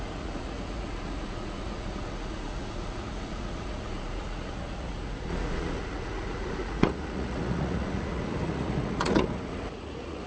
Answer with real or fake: fake